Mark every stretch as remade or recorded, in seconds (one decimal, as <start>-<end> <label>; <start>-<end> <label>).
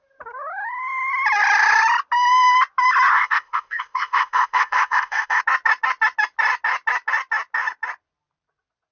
0.0-3.1 recorded; 3.1-5.4 remade; 5.4-8.9 recorded